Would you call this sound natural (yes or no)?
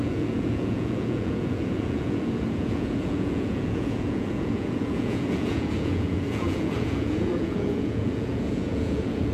no